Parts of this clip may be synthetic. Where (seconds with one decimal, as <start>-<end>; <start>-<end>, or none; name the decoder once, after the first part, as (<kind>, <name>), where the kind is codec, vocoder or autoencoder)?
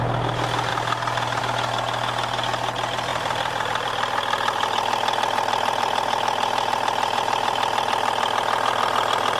3.1-3.9 (vocoder, BigVGAN v2)